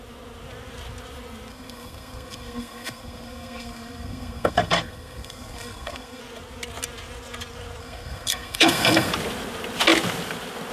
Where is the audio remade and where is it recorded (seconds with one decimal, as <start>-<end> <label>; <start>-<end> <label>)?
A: 0.0-1.5 recorded; 1.5-6.2 remade; 6.2-7.8 recorded; 7.8-9.1 remade; 9.1-10.7 recorded